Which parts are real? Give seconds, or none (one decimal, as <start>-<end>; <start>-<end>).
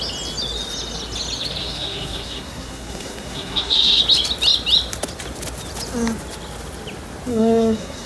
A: 0.0-1.6; 4.0-7.3